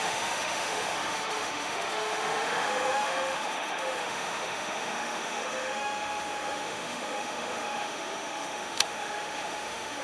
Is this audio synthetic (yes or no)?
yes